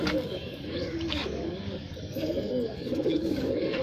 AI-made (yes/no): yes